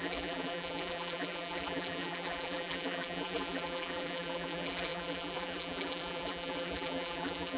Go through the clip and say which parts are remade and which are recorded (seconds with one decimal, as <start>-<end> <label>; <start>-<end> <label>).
0.0-7.6 remade

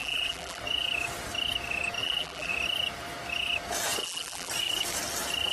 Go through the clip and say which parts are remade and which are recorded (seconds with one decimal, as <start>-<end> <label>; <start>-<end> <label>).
0.0-0.6 remade; 0.6-2.0 recorded; 2.0-2.5 remade; 2.5-4.0 recorded; 4.0-4.5 remade; 4.5-5.5 recorded

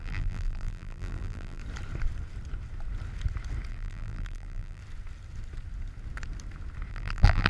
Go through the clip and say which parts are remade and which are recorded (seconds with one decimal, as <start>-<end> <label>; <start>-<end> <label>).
0.0-1.6 remade; 1.6-3.7 recorded; 3.7-4.8 remade; 4.8-6.9 recorded; 6.9-7.5 remade

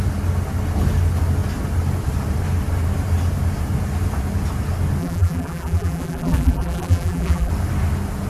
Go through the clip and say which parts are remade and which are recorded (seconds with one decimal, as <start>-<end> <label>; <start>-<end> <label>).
0.0-5.0 recorded; 5.0-7.5 remade; 7.5-8.3 recorded

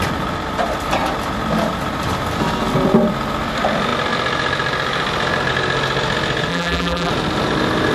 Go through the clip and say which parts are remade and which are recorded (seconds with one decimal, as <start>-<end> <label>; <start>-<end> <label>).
0.0-6.5 recorded; 6.5-7.1 remade; 7.1-7.9 recorded

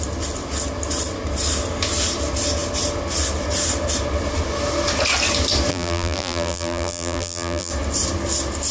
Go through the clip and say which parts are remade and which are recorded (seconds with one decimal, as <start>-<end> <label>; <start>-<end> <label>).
0.0-5.7 recorded; 5.7-7.7 remade; 7.7-8.7 recorded